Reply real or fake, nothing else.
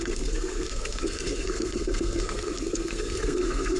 fake